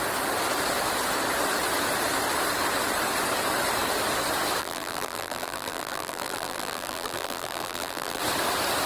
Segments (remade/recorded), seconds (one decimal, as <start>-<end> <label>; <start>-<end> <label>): 0.0-4.6 recorded; 4.6-8.2 remade; 8.2-8.9 recorded

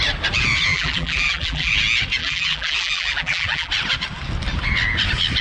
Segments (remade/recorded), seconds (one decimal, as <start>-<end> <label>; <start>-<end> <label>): 0.0-0.7 recorded; 0.7-1.7 remade; 1.7-2.2 recorded; 2.2-3.7 remade; 3.7-5.4 recorded

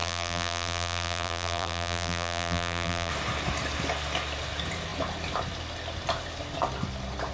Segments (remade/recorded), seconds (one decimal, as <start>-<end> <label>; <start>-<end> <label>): 0.0-3.1 remade; 3.1-7.3 recorded

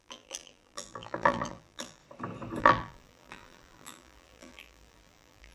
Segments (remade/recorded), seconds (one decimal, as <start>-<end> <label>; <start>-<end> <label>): 0.0-2.0 remade; 2.0-2.6 recorded; 2.6-5.5 remade

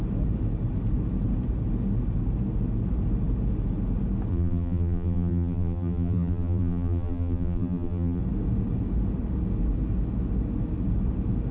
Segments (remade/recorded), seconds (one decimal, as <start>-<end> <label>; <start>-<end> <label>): 0.0-4.3 recorded; 4.3-8.2 remade; 8.2-11.5 recorded

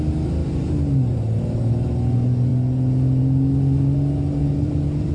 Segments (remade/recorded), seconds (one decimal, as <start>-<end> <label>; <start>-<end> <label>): 0.0-4.4 recorded; 4.4-5.1 remade

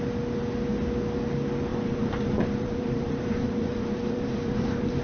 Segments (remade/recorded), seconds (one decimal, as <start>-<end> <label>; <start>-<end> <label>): 0.0-1.7 recorded; 1.7-5.0 remade

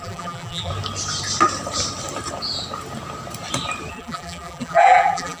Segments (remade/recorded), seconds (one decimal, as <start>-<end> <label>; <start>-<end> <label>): 0.0-0.7 remade; 0.7-3.9 recorded; 3.9-5.4 remade